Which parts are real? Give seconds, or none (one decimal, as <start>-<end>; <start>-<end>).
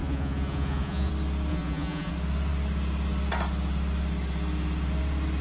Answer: 1.1-1.5; 2.1-5.4